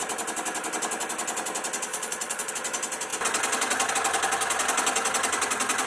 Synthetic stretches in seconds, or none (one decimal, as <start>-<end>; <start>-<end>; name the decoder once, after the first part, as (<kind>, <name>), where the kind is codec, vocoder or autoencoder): 1.9-2.5 (vocoder, Vocos)